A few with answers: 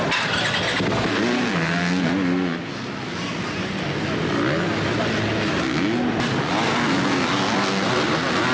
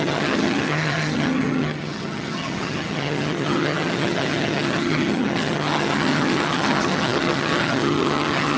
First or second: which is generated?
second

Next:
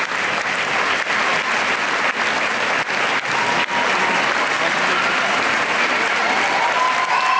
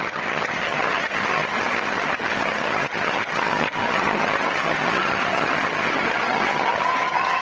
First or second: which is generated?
second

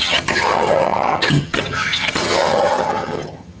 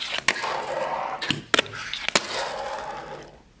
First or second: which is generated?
first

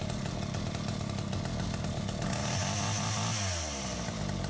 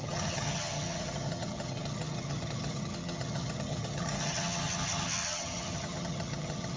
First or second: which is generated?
second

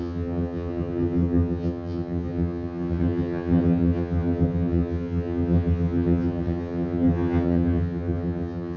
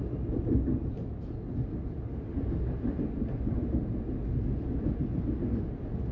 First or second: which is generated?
first